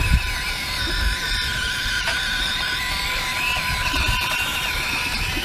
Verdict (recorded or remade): remade